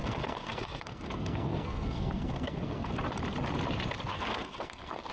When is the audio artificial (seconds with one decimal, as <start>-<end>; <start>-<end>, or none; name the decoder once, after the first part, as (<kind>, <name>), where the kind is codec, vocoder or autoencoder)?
0.0-2.9 (codec, SNAC); 4.1-5.1